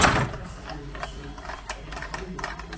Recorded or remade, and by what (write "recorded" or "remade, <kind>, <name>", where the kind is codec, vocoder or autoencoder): recorded